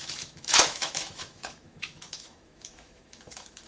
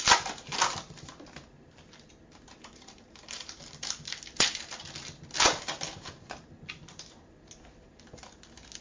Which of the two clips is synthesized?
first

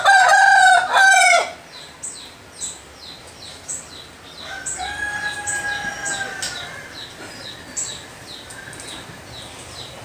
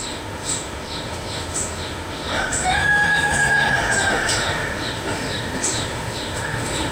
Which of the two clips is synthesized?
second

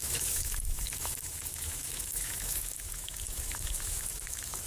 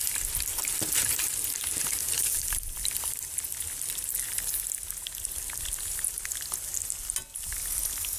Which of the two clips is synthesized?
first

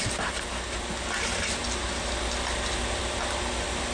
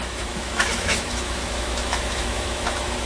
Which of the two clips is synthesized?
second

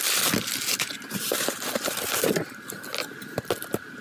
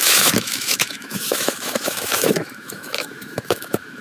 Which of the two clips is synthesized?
second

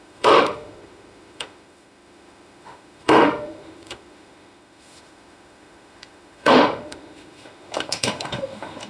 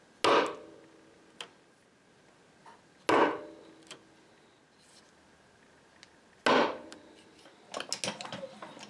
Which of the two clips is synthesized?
first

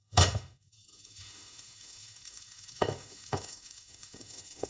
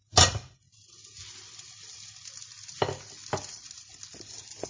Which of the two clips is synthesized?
first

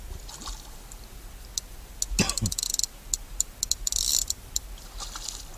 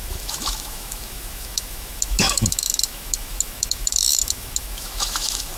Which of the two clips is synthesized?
second